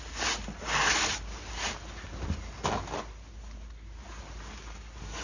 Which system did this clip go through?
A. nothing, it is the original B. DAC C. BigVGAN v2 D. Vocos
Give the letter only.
A